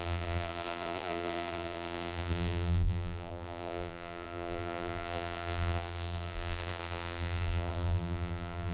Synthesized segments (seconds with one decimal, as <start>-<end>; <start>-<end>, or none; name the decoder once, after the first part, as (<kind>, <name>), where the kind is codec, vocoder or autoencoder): 0.0-8.7 (vocoder, BigVGAN v2)